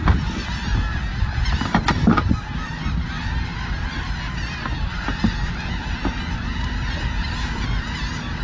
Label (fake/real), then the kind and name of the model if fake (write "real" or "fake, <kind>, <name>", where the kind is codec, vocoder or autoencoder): real